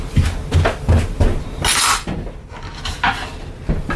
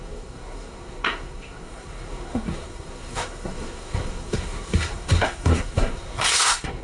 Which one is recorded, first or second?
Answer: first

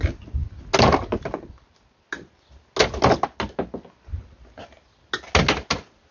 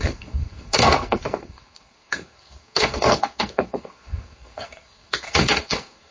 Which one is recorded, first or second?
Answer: first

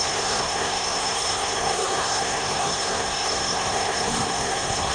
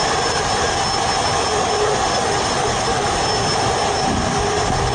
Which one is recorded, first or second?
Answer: second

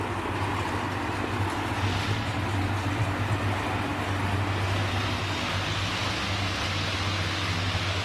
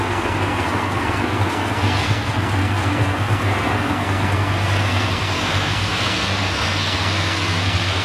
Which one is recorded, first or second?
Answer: first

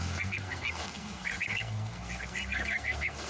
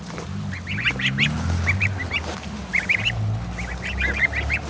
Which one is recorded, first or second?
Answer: second